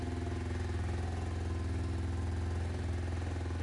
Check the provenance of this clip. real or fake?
real